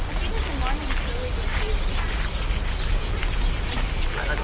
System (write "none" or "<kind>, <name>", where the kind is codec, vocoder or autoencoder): none